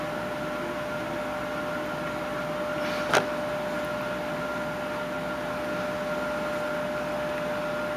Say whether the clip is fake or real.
real